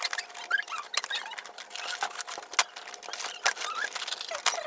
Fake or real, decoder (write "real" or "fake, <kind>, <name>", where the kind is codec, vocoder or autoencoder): real